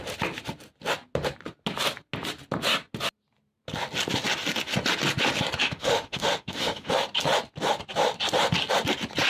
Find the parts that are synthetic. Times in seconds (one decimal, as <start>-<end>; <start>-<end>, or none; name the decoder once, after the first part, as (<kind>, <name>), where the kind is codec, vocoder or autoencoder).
5.6-6.9 (autoencoder, DAC-VAE)